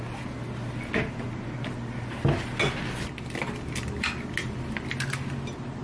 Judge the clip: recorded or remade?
recorded